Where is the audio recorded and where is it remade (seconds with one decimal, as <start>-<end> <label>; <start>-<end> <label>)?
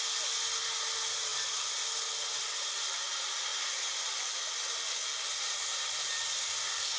0.0-7.0 recorded